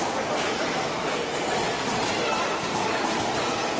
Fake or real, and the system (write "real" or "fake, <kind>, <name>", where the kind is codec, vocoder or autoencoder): real